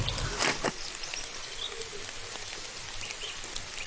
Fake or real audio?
real